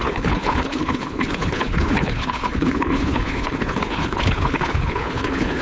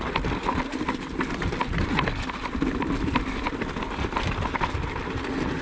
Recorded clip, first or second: second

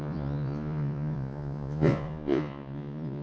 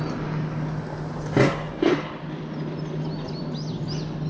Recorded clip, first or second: second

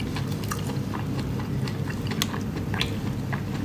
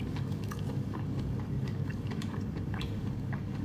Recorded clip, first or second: first